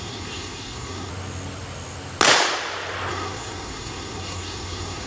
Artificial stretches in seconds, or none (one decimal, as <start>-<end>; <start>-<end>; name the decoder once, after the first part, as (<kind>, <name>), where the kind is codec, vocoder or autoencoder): 0.0-1.1 (codec, SNAC); 3.1-5.1